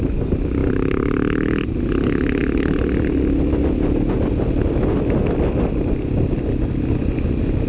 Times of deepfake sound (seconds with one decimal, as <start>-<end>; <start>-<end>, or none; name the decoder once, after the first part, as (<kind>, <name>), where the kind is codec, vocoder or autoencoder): none